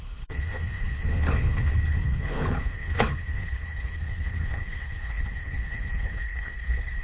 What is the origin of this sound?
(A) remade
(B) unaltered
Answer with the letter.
A